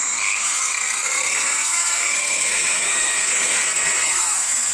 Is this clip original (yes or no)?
no